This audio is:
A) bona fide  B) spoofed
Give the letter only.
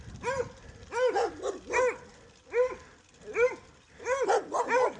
A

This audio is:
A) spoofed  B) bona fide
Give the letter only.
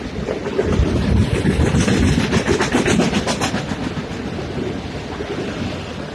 B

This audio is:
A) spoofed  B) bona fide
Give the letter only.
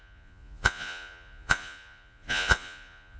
A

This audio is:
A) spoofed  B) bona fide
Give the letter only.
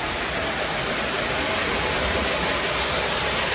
B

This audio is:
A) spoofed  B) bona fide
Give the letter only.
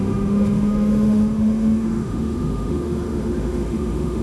A